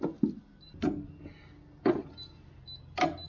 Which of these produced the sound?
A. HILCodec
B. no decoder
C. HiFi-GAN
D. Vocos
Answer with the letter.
B